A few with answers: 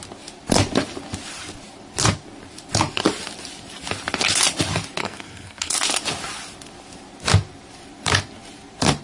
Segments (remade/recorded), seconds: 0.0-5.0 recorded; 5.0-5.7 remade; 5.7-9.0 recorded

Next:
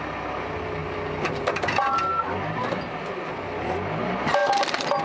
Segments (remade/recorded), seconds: 0.0-5.0 recorded